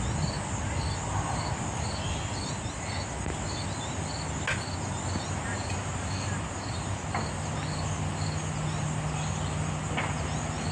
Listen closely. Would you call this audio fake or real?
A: real